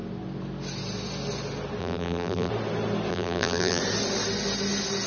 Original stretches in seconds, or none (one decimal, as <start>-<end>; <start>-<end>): 0.0-1.8; 2.5-3.1; 3.8-5.1